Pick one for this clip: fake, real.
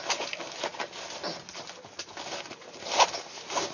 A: real